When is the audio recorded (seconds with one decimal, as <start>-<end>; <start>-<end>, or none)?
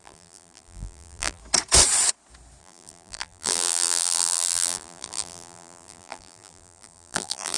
1.4-2.6